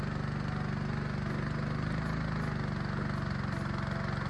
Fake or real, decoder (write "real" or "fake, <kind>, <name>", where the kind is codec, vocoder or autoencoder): real